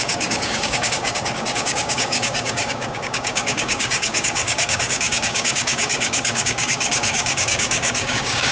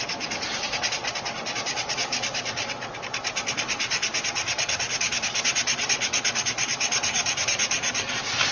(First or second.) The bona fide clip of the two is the second